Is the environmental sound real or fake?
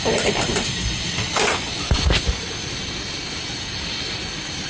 real